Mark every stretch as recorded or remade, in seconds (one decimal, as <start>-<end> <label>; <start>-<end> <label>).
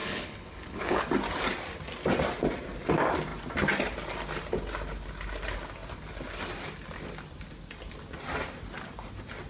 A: 0.0-1.0 remade; 1.0-9.5 recorded